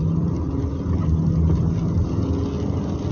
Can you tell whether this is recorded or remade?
recorded